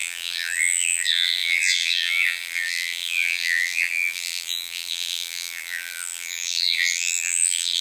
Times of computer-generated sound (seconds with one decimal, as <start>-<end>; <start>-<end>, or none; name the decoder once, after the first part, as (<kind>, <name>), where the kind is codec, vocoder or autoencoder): 0.0-7.8 (vocoder, BigVGAN v2)